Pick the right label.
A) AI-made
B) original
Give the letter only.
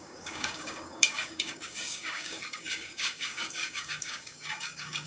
A